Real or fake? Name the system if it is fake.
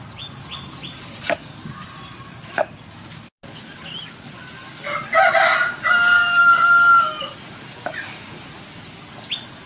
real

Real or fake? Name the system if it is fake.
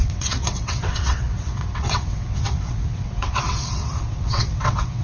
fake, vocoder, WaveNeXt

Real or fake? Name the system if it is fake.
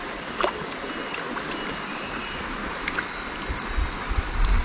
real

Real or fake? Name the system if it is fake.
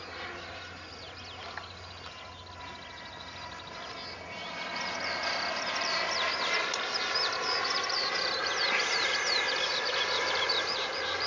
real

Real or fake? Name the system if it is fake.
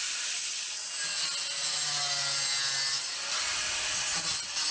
real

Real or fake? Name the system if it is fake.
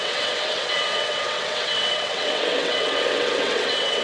fake, vocoder, WaveNeXt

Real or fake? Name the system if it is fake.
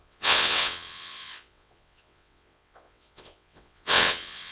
fake, vocoder, WaveNeXt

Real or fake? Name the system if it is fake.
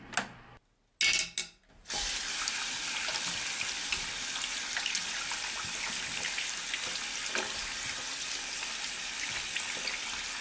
real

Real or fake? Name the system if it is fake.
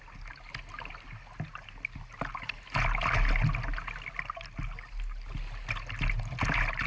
real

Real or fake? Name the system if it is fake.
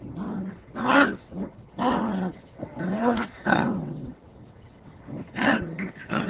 fake, vocoder, WaveNeXt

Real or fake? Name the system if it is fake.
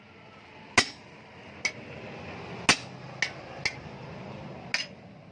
real